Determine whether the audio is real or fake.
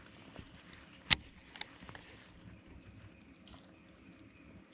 real